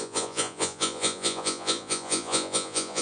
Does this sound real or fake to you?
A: fake